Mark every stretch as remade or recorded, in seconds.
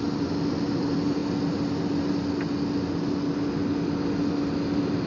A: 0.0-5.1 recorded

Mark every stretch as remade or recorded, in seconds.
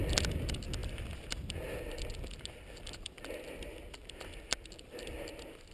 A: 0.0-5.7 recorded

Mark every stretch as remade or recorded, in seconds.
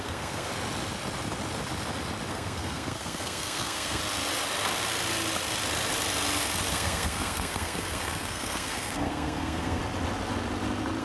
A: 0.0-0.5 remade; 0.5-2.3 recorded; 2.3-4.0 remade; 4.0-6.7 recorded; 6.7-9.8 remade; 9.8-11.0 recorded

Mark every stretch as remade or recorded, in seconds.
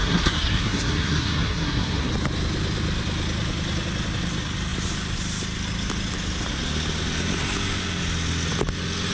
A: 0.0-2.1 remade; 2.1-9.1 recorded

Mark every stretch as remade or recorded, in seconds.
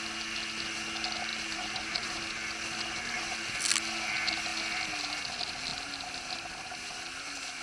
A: 0.0-1.3 recorded; 1.3-2.2 remade; 2.2-7.6 recorded